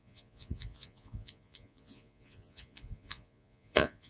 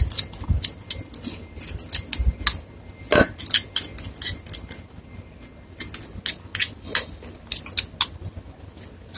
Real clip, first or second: second